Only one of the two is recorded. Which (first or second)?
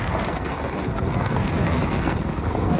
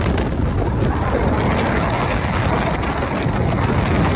second